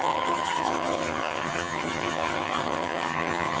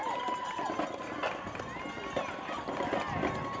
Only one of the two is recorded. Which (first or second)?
second